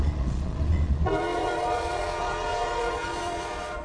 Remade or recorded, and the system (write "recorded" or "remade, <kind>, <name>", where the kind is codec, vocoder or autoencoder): remade, vocoder, Vocos